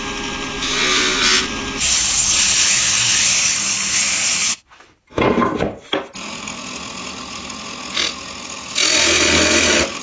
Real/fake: real